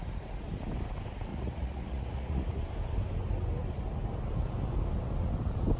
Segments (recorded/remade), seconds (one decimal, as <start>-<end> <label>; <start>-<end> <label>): 0.0-1.3 recorded; 1.3-2.6 remade; 2.6-5.8 recorded